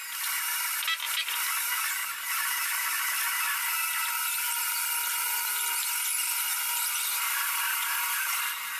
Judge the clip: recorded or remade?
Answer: recorded